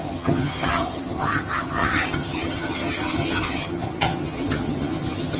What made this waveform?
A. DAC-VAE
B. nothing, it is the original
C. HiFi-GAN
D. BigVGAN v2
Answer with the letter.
C